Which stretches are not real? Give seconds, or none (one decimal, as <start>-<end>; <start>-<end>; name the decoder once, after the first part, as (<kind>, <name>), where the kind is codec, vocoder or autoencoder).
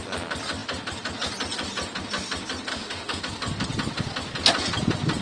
2.7-3.2 (autoencoder, DAC-VAE)